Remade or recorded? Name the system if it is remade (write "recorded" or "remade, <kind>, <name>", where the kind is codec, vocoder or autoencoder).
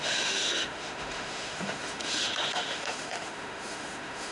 remade, autoencoder, DAC-VAE